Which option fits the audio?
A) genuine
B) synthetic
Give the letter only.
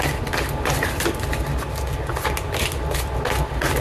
A